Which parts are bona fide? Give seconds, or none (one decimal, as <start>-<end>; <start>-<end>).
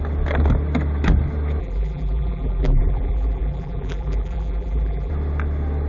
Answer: 0.0-1.6; 5.1-5.9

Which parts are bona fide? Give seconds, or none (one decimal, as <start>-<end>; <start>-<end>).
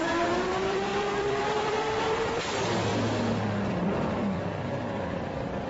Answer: 2.9-3.7